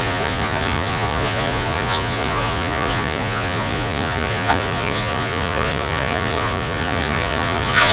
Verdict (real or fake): fake